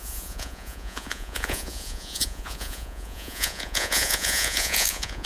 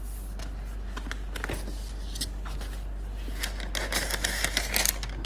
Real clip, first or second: second